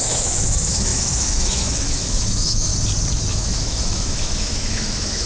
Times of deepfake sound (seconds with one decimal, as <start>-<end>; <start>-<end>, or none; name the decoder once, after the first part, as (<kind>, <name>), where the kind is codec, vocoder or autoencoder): 0.0-2.7 (autoencoder, DAC-VAE); 3.3-5.3